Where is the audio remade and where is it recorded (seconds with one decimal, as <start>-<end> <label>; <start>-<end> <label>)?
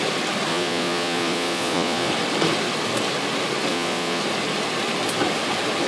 0.0-0.5 recorded; 0.5-2.1 remade; 2.1-3.7 recorded; 3.7-4.2 remade; 4.2-5.9 recorded